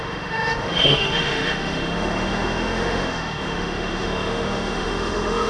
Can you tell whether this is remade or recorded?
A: remade